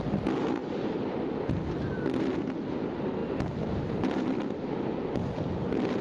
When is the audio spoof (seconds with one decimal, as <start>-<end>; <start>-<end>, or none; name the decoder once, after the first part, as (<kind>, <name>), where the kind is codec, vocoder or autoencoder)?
none